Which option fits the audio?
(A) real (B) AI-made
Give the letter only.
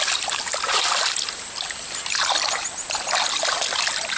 A